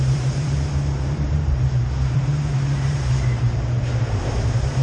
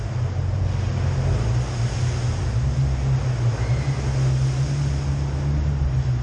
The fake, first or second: first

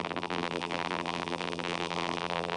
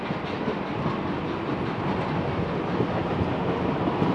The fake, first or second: first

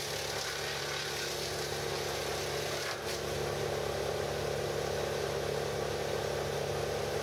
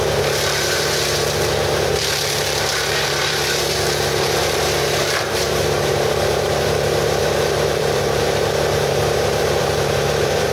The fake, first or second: second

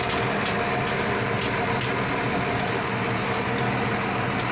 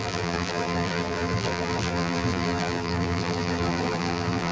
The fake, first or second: second